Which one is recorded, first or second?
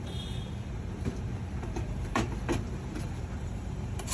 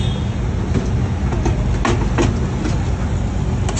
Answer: second